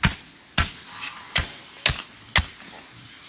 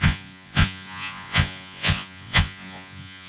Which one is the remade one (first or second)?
second